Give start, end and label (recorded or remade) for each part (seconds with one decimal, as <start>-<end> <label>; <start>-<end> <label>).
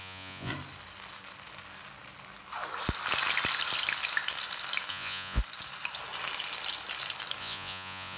0.0-0.5 remade; 0.5-4.9 recorded; 4.9-5.4 remade; 5.4-7.4 recorded; 7.4-8.2 remade